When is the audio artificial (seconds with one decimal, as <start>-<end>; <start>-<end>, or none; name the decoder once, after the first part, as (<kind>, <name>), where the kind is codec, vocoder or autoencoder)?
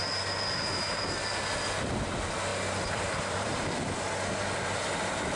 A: 2.5-3.8 (vocoder, BigVGAN v2)